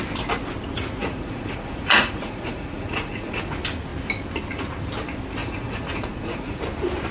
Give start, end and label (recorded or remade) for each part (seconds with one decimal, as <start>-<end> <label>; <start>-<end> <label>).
0.0-1.0 recorded; 1.0-3.4 remade; 3.4-5.4 recorded; 5.4-6.6 remade; 6.6-7.1 recorded